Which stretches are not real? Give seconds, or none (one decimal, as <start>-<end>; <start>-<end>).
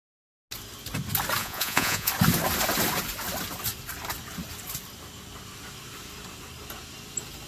1.4-2.1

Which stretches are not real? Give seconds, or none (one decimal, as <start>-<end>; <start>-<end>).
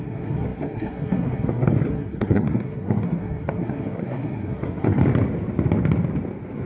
0.0-5.0